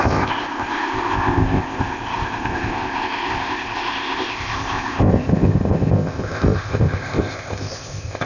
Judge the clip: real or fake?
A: fake